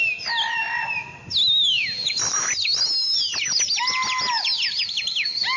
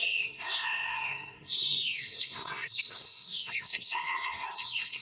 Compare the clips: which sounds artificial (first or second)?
second